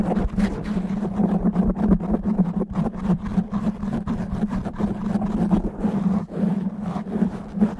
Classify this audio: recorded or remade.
remade